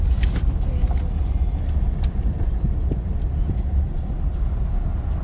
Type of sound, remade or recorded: recorded